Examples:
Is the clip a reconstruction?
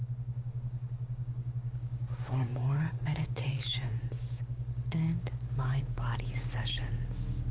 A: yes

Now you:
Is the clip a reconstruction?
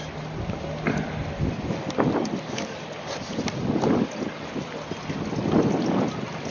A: no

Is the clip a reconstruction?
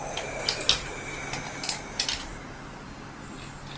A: no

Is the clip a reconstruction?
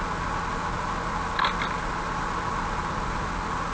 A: no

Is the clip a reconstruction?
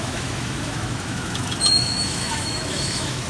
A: yes